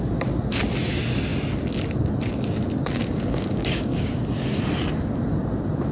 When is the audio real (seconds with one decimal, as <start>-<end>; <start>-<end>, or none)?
0.0-3.0; 4.1-5.9